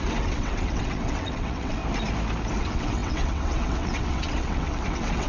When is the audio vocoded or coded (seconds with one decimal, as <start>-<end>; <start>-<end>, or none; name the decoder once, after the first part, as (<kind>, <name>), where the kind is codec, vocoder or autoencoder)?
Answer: 0.0-1.8 (vocoder, WaveNeXt); 2.6-5.3